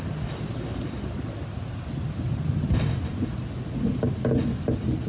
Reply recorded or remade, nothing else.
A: recorded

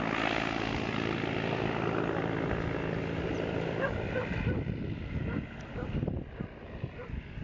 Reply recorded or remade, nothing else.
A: recorded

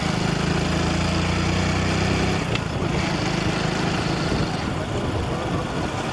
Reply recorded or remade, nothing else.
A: recorded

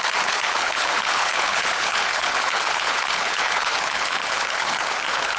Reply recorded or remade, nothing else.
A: remade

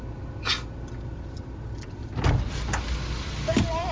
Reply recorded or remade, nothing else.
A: remade